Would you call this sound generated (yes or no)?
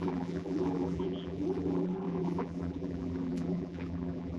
yes